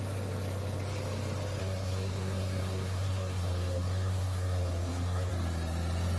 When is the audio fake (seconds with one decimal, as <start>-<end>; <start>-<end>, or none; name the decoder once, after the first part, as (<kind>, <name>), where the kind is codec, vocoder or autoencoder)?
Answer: 1.6-5.3 (codec, SNAC)